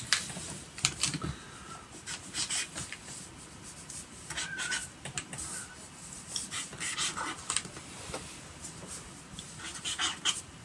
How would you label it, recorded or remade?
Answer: recorded